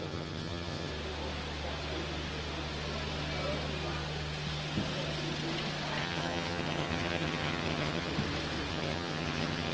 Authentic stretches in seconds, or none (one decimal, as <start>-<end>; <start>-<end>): 0.9-6.0; 8.1-8.7